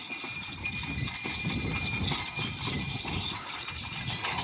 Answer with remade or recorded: recorded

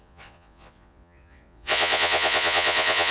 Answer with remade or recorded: remade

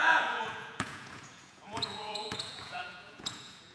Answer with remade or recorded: remade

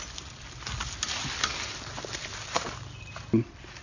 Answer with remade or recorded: recorded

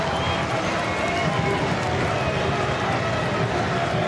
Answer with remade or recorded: recorded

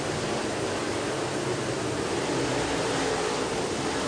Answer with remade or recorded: recorded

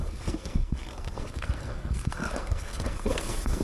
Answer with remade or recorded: remade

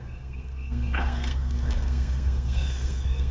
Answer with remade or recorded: remade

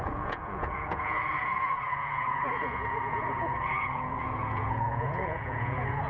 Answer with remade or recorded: remade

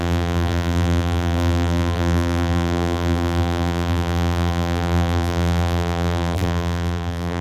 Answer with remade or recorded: remade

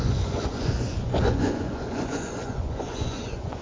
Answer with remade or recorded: remade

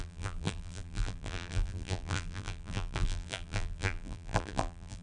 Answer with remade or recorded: remade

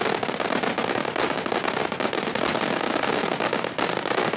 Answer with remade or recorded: recorded